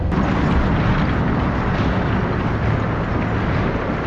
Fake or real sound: real